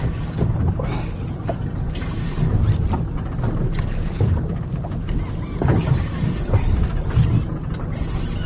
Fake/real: real